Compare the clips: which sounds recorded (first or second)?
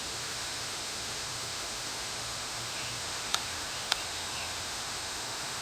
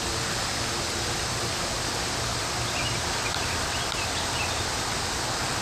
second